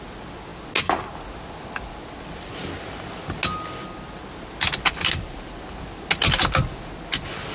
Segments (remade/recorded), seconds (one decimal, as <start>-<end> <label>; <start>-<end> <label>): 0.0-7.5 recorded